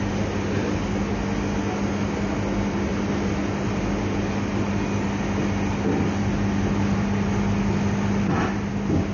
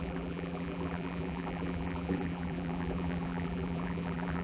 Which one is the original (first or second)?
first